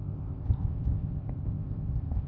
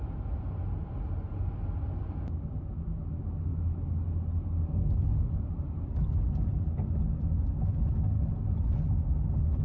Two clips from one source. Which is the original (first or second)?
second